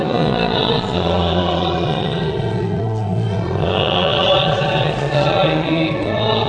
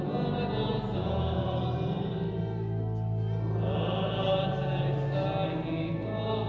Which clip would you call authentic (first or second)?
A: second